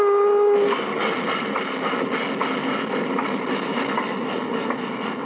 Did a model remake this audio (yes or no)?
no